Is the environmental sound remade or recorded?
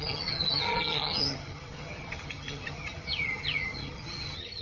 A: remade